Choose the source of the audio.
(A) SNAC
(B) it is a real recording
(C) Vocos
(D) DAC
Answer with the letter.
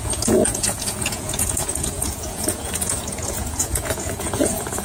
C